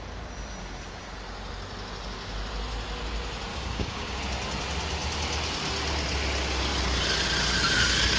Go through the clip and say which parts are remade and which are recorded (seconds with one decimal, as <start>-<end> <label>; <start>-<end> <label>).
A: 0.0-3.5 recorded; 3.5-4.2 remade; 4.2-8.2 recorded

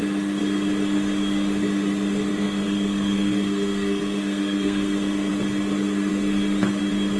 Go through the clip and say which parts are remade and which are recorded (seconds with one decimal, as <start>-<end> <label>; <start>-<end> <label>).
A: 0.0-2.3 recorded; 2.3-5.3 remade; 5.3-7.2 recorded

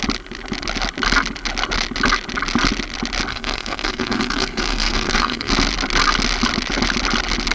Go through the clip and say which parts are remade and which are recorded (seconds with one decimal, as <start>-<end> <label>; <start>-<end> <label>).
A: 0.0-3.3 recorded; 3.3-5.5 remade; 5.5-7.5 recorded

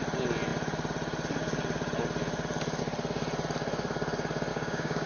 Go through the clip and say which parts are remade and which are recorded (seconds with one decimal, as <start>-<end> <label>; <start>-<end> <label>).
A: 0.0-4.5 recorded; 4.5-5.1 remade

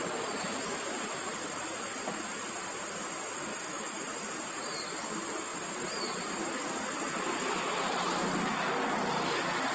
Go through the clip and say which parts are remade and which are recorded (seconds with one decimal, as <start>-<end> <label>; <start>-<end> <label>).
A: 0.0-3.5 recorded; 3.5-4.0 remade; 4.0-9.7 recorded